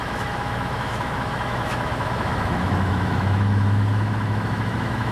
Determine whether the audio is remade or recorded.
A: remade